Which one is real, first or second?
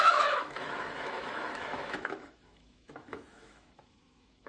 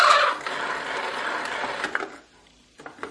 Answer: second